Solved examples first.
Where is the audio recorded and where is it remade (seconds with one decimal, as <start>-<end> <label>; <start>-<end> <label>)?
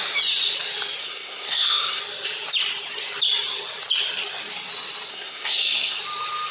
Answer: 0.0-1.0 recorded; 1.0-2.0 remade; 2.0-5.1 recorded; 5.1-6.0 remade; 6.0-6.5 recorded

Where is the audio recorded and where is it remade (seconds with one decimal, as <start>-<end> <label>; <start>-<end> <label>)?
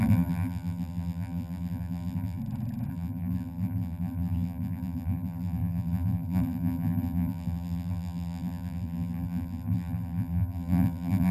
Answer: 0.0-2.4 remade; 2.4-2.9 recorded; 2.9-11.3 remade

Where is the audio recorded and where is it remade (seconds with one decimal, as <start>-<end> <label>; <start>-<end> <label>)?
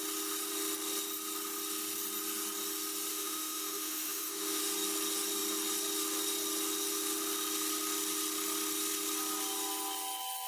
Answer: 0.0-3.1 recorded; 3.1-4.6 remade; 4.6-10.5 recorded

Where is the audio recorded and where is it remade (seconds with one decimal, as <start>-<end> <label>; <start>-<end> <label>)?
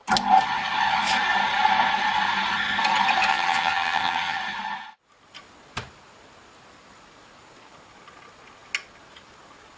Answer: 0.0-3.3 recorded; 3.3-4.4 remade; 4.4-9.8 recorded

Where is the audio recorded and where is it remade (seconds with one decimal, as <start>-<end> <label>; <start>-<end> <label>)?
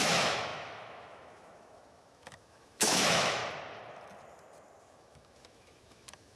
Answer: 0.0-3.4 remade; 3.4-4.8 recorded; 4.8-6.4 remade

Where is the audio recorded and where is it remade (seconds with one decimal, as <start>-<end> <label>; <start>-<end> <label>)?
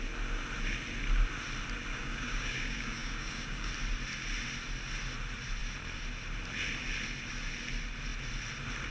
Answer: 0.0-1.9 recorded; 1.9-3.7 remade; 3.7-8.9 recorded